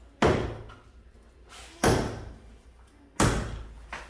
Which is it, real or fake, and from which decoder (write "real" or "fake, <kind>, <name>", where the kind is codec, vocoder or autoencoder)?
real